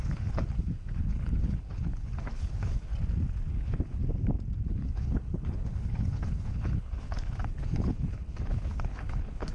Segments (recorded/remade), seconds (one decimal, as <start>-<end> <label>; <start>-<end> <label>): 0.0-2.9 remade; 2.9-3.5 recorded; 3.5-4.0 remade; 4.0-4.7 recorded; 4.7-9.5 remade